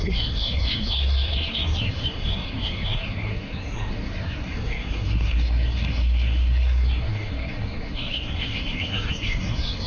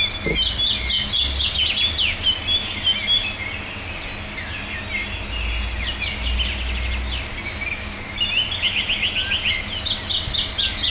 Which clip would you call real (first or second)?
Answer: second